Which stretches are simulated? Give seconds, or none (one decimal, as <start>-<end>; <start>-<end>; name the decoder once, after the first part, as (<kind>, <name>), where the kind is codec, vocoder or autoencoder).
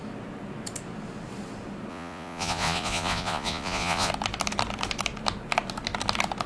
1.9-4.1 (vocoder, Vocos)